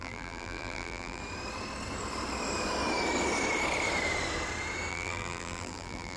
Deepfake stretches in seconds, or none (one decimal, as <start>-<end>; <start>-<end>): 0.0-1.2; 4.9-6.2